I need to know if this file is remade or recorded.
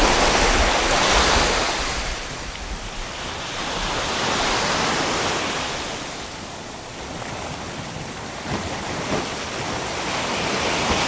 recorded